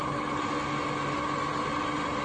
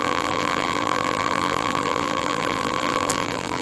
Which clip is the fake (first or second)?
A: second